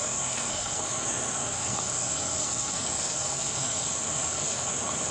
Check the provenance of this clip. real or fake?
fake